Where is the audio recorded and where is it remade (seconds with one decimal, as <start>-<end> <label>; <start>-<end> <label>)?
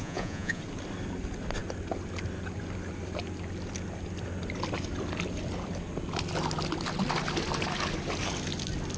0.0-0.6 remade; 0.6-9.0 recorded